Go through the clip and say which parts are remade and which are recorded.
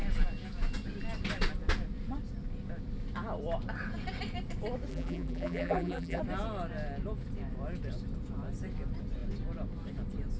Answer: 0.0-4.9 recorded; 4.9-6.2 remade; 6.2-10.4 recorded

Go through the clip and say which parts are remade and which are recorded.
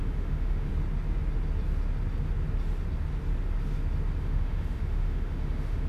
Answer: 0.0-0.7 remade; 0.7-4.2 recorded; 4.2-5.9 remade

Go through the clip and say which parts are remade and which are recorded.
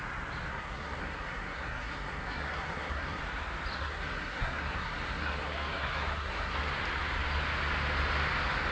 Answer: 0.0-0.5 recorded; 0.5-3.2 remade; 3.2-3.8 recorded; 3.8-6.7 remade; 6.7-8.7 recorded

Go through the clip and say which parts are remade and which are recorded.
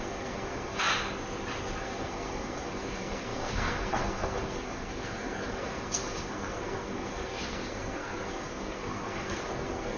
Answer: 0.0-0.9 remade; 0.9-1.8 recorded; 1.8-10.0 remade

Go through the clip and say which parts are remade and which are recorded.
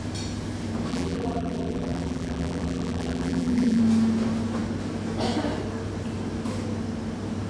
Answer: 0.0-0.9 recorded; 0.9-3.8 remade; 3.8-7.5 recorded